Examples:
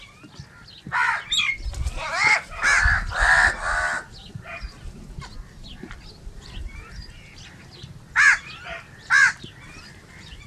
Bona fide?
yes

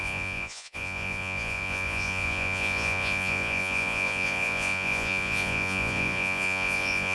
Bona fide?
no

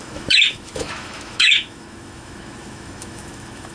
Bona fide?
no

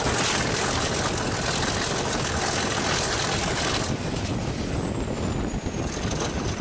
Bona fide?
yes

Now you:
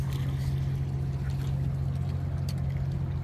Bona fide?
yes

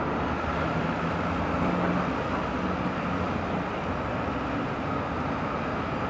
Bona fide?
yes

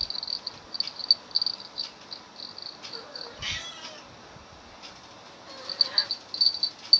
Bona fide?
yes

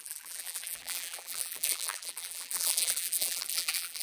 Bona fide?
no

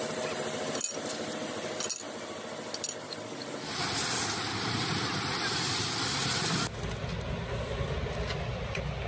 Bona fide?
yes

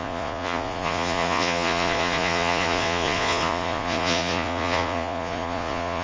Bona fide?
no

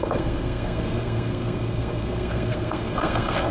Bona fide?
no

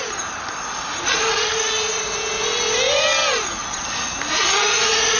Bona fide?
yes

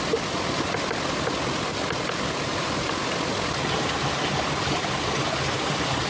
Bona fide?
yes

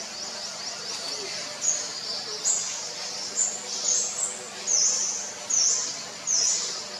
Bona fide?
yes